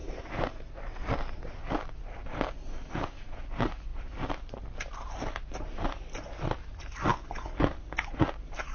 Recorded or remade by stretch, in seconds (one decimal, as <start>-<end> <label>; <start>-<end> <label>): 0.0-8.7 recorded